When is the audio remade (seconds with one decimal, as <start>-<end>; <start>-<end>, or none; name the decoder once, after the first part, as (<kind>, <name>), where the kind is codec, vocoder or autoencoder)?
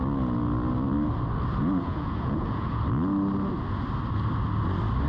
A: 1.6-2.8 (vocoder, Vocos)